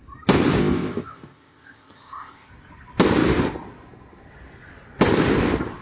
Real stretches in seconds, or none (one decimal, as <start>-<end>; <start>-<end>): 0.0-0.6; 2.5-5.8